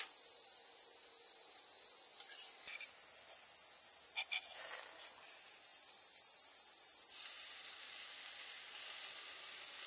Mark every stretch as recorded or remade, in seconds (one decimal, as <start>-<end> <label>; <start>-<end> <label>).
0.0-2.1 recorded; 2.1-2.7 remade; 2.7-5.7 recorded; 5.7-7.5 remade; 7.5-9.9 recorded